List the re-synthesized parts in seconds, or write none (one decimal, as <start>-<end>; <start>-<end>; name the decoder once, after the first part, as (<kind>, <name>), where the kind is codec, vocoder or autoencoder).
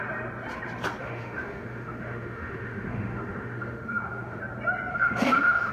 1.0-4.4 (autoencoder, DAC-VAE); 4.9-5.7